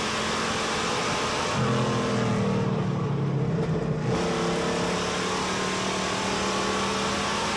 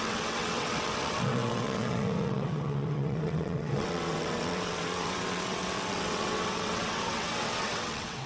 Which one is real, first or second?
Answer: first